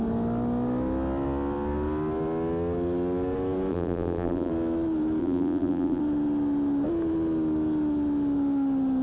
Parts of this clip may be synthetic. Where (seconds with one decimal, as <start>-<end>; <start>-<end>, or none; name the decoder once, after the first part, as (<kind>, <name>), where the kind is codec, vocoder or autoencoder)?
3.7-4.5 (vocoder, BigVGAN v2); 5.2-6.0